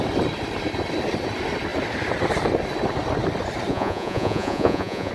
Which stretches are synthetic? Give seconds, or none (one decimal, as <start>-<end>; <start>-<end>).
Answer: 3.7-5.1